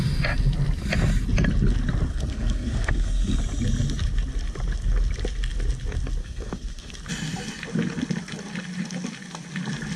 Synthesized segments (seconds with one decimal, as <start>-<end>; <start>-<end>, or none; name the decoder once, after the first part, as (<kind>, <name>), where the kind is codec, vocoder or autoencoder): 2.1-3.4 (codec, SNAC); 6.2-6.9